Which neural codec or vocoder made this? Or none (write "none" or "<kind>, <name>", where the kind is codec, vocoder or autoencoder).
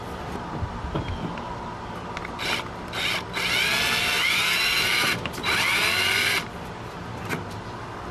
none